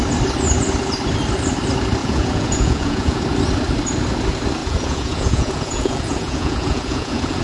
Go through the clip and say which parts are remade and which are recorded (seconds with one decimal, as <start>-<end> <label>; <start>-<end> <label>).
0.0-2.0 recorded; 2.0-3.2 remade; 3.2-4.6 recorded; 4.6-7.4 remade